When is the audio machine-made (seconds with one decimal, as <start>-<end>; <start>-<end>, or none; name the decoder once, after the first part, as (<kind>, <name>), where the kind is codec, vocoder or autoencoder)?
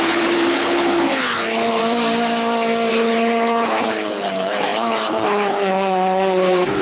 0.0-1.8 (codec, HILCodec); 2.9-6.8